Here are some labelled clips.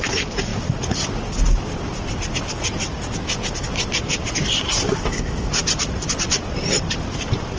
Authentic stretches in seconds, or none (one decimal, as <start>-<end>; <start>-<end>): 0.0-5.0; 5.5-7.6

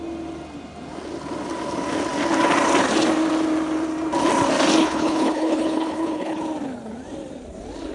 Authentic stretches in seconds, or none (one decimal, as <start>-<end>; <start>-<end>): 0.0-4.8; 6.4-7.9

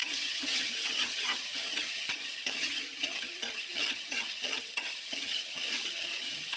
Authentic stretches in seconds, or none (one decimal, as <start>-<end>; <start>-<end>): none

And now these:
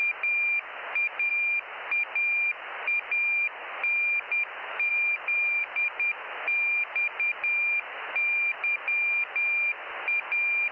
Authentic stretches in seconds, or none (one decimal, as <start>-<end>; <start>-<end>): 0.0-4.9; 5.9-10.7

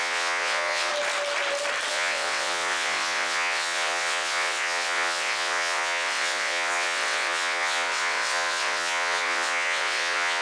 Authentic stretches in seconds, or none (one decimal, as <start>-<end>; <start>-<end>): 0.9-1.9

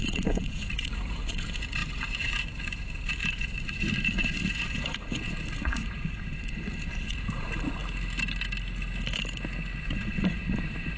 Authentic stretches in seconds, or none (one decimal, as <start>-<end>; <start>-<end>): 7.8-9.8

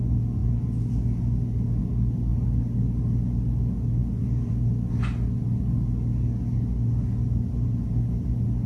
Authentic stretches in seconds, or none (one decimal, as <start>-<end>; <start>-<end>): 0.0-8.7

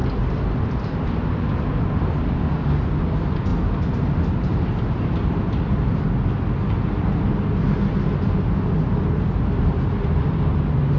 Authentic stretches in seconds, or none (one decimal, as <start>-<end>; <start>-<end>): 1.2-11.0